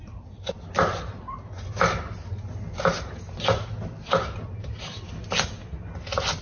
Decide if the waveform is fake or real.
real